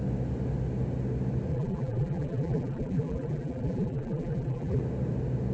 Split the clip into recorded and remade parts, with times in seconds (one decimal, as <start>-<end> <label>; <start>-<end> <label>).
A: 0.0-1.5 recorded; 1.5-4.8 remade; 4.8-5.5 recorded